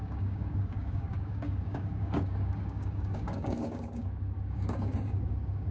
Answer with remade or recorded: remade